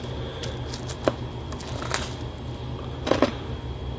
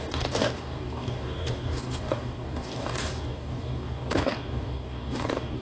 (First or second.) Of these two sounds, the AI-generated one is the second